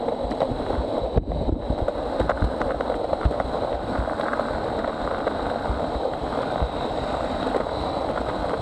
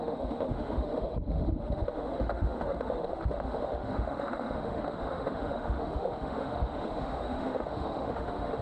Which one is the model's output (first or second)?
second